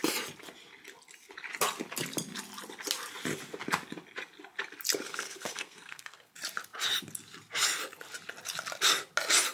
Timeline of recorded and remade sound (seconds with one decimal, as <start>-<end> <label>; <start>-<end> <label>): 0.0-5.1 recorded; 5.1-6.3 remade; 6.3-9.5 recorded